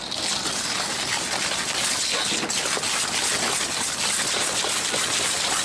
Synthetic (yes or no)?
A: no